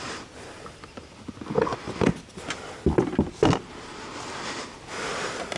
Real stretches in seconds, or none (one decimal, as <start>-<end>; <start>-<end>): 0.0-5.6